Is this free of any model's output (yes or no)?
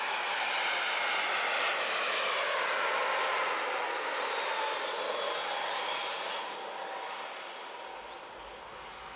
yes